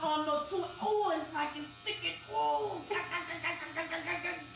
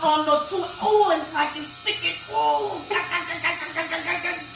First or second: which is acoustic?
first